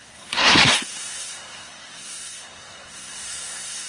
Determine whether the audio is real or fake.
fake